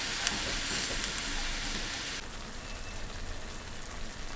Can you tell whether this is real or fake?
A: real